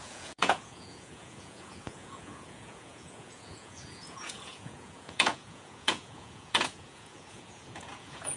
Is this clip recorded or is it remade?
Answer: remade